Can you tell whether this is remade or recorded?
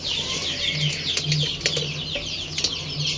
recorded